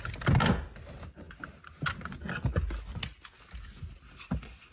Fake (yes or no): no